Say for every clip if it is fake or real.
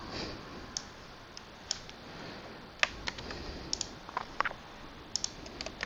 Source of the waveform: real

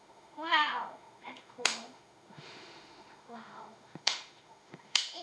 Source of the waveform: fake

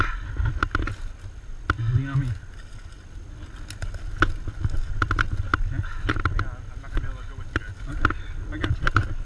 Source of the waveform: real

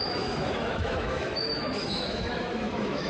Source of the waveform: fake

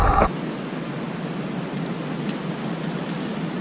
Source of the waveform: real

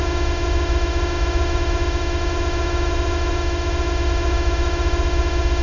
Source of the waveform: fake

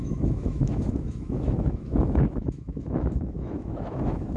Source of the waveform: fake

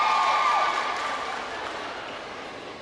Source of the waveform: real